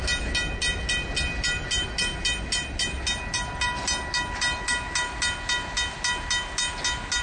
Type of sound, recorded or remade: recorded